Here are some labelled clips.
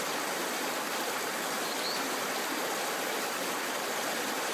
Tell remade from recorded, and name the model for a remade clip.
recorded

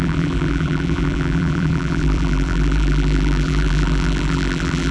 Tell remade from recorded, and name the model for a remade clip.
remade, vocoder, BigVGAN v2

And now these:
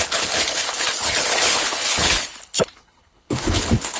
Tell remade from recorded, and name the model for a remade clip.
remade, codec, HILCodec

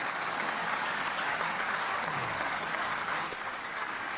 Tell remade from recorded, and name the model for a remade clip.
remade, codec, DAC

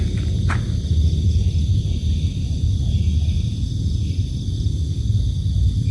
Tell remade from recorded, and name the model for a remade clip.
recorded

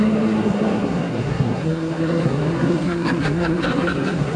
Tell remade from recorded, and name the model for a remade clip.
remade, codec, SNAC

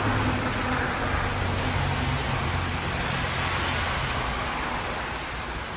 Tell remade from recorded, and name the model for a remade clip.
recorded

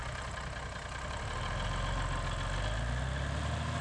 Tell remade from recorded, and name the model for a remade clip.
recorded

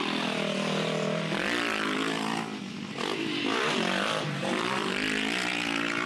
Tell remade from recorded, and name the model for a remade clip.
recorded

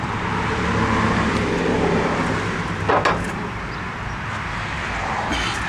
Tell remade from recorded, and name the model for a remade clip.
recorded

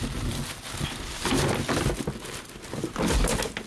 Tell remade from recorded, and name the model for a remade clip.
recorded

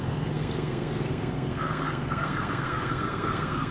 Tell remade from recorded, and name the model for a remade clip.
remade, codec, SNAC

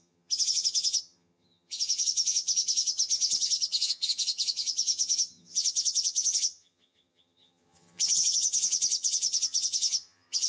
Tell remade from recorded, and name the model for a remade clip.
remade, vocoder, HiFi-GAN